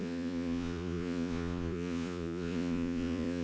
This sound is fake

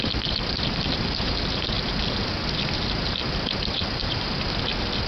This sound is real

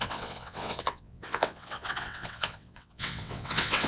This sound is fake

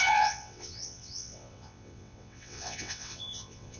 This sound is fake